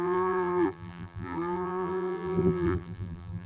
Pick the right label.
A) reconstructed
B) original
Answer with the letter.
A